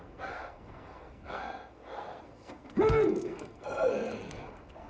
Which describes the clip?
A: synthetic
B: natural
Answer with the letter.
A